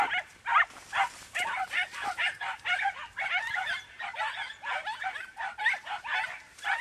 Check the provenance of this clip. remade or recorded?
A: remade